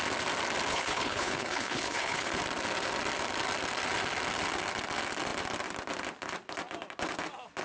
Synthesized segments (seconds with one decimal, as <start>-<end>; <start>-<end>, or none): 0.7-2.4